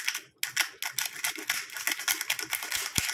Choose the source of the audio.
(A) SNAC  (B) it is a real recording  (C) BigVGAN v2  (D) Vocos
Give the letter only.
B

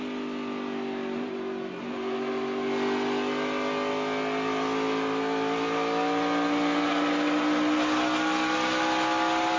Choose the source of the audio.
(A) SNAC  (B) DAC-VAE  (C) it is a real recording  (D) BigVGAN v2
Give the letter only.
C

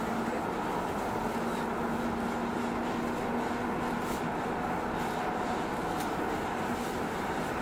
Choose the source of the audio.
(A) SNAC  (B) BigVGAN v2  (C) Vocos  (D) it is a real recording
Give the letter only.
D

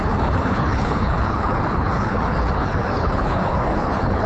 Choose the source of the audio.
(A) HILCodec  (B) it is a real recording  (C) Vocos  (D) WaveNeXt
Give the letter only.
A